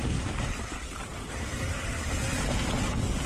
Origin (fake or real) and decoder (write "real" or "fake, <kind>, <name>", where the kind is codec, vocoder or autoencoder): real